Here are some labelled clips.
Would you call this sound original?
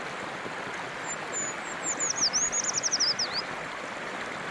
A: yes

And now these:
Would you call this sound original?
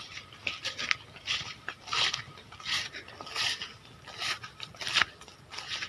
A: yes